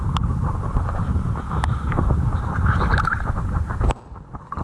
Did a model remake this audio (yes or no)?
yes